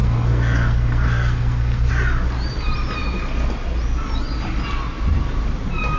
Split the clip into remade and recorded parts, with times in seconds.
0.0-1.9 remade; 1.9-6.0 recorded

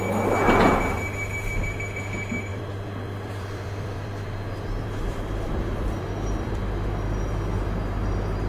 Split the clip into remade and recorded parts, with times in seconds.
0.0-2.5 recorded; 2.5-6.6 remade; 6.6-8.5 recorded

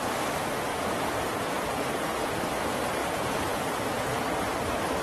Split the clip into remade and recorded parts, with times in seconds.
0.0-0.7 recorded; 0.7-2.4 remade; 2.4-3.0 recorded; 3.0-4.5 remade; 4.5-5.0 recorded

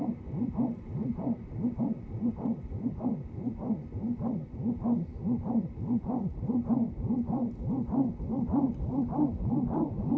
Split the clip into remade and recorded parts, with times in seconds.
0.0-10.2 recorded

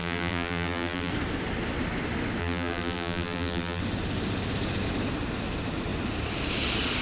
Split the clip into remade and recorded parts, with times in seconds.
0.0-1.1 remade; 1.1-2.4 recorded; 2.4-3.8 remade; 3.8-7.0 recorded

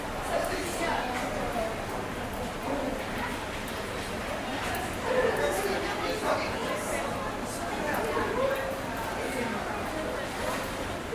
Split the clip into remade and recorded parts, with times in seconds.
0.0-11.1 recorded